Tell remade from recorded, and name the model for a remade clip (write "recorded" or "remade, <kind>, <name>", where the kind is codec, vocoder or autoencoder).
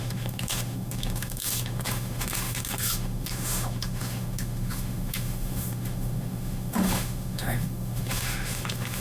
remade, autoencoder, DAC-VAE